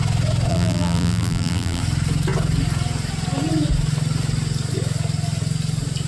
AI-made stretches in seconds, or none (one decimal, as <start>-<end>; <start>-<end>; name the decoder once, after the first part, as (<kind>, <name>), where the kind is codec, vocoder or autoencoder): 0.5-1.8 (vocoder, BigVGAN v2)